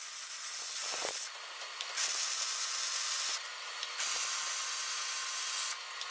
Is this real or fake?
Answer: real